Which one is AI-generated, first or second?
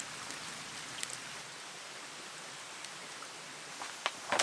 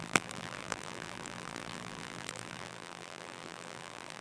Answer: second